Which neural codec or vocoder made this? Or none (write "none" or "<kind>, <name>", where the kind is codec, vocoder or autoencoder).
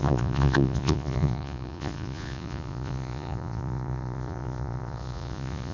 vocoder, Vocos